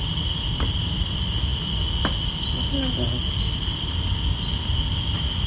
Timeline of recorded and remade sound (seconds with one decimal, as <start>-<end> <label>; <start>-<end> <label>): 0.0-5.5 recorded